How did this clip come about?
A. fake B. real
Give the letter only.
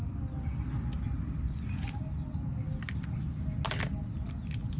B